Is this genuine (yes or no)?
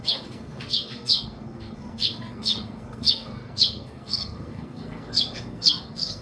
no